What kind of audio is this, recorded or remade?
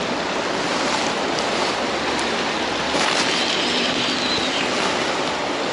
recorded